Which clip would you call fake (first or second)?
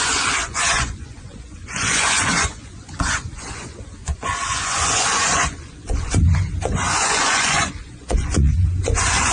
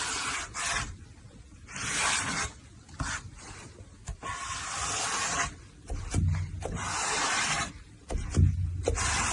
first